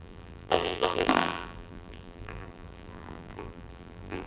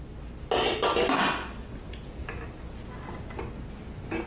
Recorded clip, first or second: second